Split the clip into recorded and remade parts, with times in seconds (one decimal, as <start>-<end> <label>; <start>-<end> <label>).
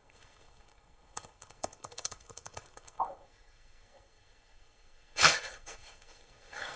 0.0-6.8 remade